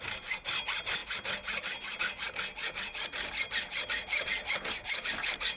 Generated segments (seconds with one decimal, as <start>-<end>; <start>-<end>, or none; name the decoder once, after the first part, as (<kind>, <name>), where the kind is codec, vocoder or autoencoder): none